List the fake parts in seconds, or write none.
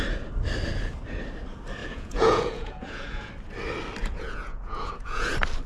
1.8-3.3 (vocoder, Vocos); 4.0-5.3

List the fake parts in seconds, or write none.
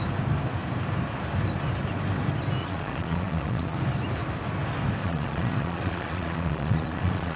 2.6-3.8 (vocoder, Vocos); 5.0-7.4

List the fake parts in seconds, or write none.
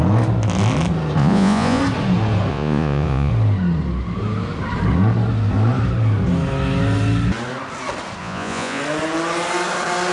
1.2-1.8 (vocoder, Vocos); 2.5-3.3; 8.2-8.8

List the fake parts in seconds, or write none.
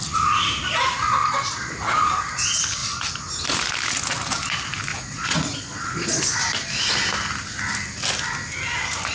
1.2-1.7 (vocoder, Vocos); 4.9-6.2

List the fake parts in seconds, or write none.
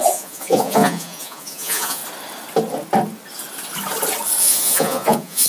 0.0-2.0 (vocoder, Vocos); 4.4-5.5